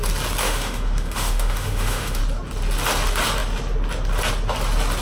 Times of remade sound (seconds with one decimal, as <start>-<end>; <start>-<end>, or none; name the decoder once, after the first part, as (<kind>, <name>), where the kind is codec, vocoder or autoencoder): 0.4-2.2 (autoencoder, DAC-VAE)